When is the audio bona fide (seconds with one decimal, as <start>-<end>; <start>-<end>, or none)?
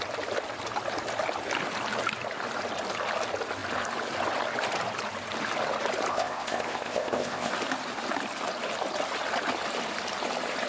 0.0-6.1; 7.5-10.7